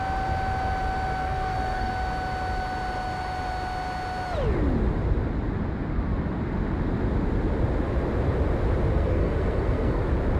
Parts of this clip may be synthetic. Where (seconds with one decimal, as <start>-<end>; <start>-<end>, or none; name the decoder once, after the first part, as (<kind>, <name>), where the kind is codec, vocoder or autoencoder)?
1.2-1.9 (codec, SNAC); 8.9-10.0

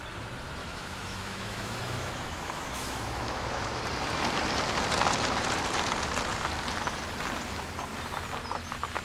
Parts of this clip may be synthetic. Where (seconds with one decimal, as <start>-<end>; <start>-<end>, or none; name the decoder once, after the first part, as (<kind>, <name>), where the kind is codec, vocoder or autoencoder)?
0.6-3.8 (autoencoder, DAC-VAE)

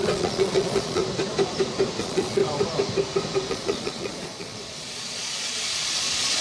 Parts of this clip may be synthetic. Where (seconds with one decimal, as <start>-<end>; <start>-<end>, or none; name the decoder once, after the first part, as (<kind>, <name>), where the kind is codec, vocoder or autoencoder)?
0.0-1.0 (vocoder, Vocos); 2.0-2.4; 3.5-6.4

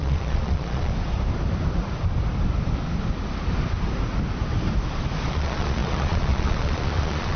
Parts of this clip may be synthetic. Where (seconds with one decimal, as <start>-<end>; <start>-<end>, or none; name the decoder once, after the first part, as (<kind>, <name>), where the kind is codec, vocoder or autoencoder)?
0.0-0.9 (vocoder, Vocos); 5.3-7.4